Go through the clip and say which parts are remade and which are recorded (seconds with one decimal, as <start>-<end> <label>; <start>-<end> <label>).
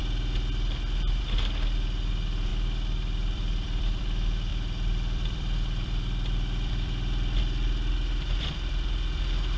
0.0-2.5 recorded; 2.5-4.0 remade; 4.0-4.5 recorded; 4.5-9.2 remade; 9.2-9.6 recorded